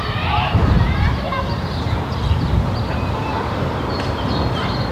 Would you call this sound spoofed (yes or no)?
yes